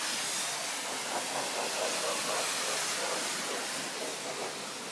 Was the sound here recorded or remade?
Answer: recorded